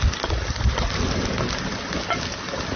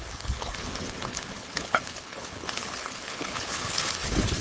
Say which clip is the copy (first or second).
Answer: second